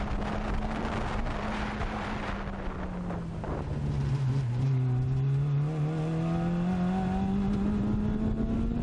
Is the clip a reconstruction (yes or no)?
no